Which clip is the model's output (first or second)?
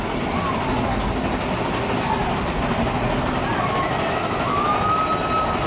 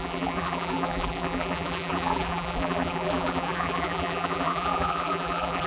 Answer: second